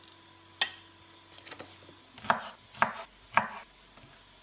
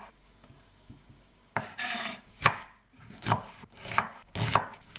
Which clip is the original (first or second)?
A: first